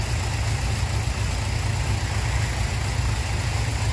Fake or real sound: real